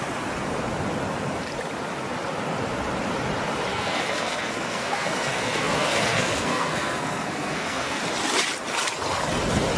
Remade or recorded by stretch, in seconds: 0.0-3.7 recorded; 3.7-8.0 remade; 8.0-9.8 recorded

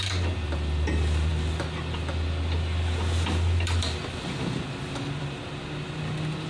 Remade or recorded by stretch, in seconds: 0.0-6.5 recorded

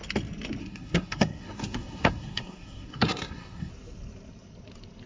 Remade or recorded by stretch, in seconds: 0.0-0.6 recorded; 0.6-3.7 remade; 3.7-5.1 recorded

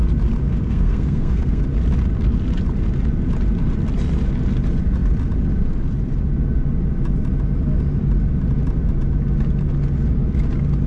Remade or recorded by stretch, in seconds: 0.0-0.4 recorded; 0.4-1.6 remade; 1.6-10.9 recorded

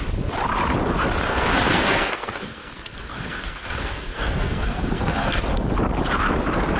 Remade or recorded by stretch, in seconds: 0.0-1.3 recorded; 1.3-5.4 remade; 5.4-6.8 recorded

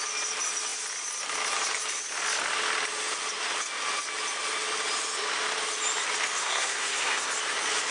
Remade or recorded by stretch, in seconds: 0.0-6.4 recorded; 6.4-7.3 remade; 7.3-7.9 recorded